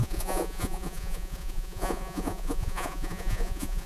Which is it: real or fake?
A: fake